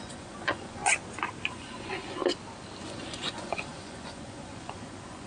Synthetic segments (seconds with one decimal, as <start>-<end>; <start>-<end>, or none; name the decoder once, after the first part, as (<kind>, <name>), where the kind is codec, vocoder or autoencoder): 0.0-0.8 (vocoder, Vocos); 1.5-2.2; 2.8-5.3